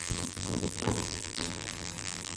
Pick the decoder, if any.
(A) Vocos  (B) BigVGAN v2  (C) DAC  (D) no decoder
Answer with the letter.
B